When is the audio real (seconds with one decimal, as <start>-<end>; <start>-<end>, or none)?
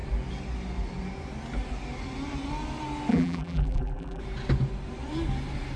0.0-3.1; 4.2-5.8